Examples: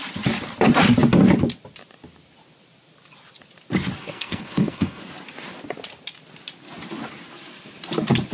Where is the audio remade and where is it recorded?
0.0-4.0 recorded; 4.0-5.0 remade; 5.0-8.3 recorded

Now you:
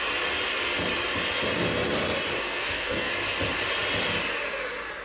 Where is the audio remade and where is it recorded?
0.0-2.4 recorded; 2.4-3.1 remade; 3.1-5.0 recorded

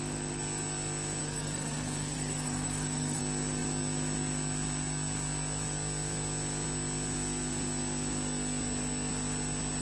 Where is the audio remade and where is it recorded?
0.0-1.2 recorded; 1.2-3.2 remade; 3.2-9.8 recorded

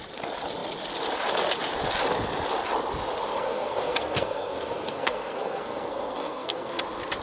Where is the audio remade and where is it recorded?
0.0-3.3 recorded; 3.3-6.8 remade; 6.8-7.2 recorded

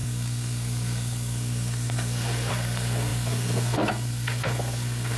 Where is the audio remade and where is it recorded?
0.0-5.2 remade

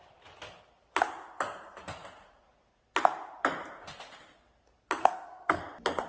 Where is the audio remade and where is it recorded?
0.0-5.0 recorded; 5.0-5.6 remade; 5.6-6.1 recorded

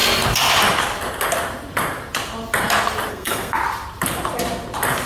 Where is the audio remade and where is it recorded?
0.0-3.1 recorded; 3.1-3.6 remade; 3.6-5.1 recorded